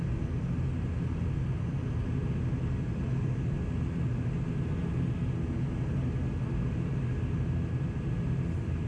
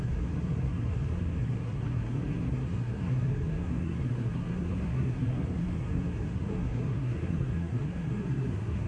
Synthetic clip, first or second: second